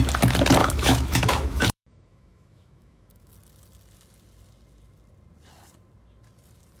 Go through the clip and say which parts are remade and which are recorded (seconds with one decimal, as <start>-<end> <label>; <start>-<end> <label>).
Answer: 0.0-0.6 recorded; 0.6-3.3 remade; 3.3-6.8 recorded